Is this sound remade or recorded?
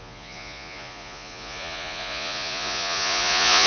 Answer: remade